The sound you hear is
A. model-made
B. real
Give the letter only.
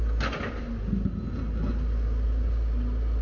B